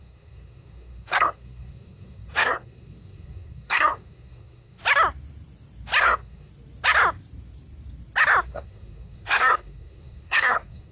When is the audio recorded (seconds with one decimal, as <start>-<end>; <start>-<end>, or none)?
4.8-6.0; 6.5-8.4